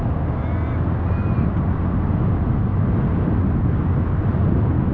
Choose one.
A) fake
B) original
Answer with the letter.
B